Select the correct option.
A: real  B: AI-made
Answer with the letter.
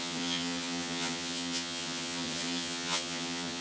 B